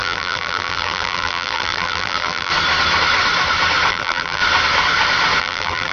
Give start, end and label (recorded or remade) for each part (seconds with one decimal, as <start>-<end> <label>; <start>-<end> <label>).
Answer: 0.0-2.5 remade; 2.5-3.9 recorded; 3.9-4.4 remade; 4.4-5.4 recorded; 5.4-5.9 remade